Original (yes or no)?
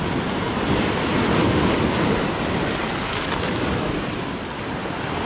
yes